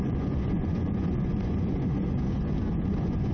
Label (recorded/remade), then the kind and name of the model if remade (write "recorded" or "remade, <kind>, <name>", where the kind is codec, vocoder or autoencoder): remade, vocoder, Vocos